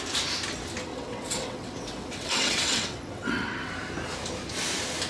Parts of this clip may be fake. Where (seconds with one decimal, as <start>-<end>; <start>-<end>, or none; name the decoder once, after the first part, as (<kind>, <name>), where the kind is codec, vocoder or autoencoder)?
0.9-3.7 (vocoder, WaveNeXt)